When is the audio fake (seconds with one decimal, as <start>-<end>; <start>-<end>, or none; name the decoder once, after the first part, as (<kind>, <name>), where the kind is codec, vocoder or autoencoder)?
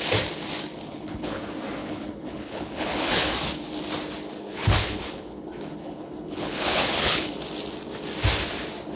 0.9-1.4 (codec, HILCodec); 1.8-3.3; 4.6-7.3